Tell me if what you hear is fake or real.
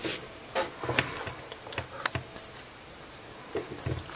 real